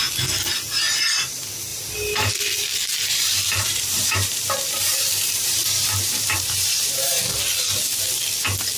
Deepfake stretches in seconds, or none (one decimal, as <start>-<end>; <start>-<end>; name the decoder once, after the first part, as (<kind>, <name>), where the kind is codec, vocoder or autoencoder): 1.7-2.3 (vocoder, BigVGAN v2); 2.9-7.2